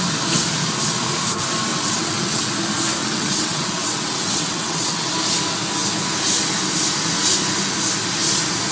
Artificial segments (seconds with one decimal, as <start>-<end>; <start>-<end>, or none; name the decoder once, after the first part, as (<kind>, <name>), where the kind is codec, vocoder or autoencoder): 1.7-2.5 (vocoder, WaveNeXt); 3.0-5.1